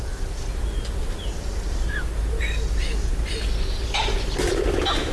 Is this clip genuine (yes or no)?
yes